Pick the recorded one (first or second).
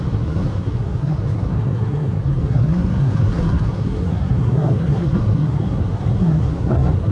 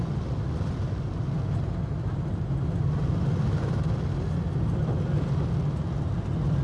second